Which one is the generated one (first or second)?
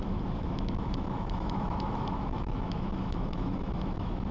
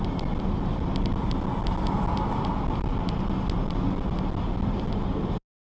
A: first